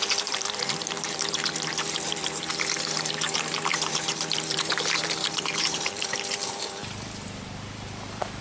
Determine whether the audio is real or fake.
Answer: fake